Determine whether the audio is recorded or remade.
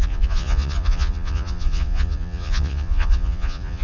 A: remade